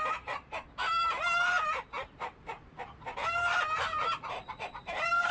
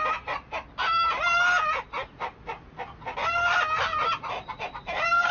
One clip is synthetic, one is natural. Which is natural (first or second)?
second